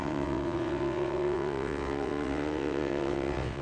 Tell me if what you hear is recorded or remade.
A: remade